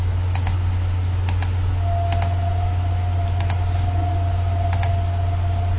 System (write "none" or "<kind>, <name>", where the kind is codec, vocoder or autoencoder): none